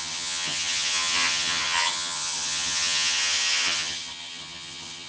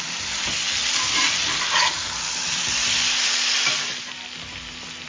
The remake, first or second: first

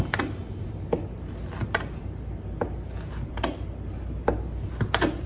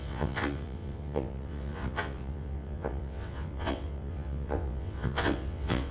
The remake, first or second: second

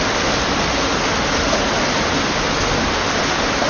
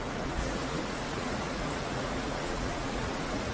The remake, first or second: second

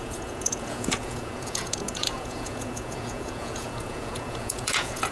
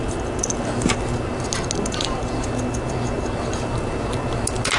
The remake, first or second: first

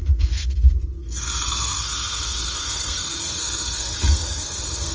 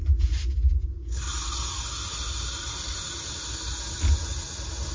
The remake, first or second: first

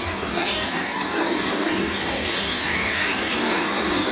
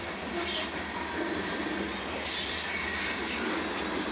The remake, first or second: first